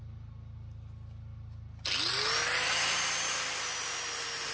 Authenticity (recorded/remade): recorded